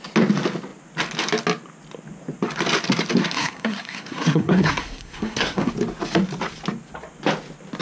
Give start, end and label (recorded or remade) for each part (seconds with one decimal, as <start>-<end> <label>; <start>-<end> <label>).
0.0-3.2 recorded; 3.2-5.7 remade; 5.7-7.8 recorded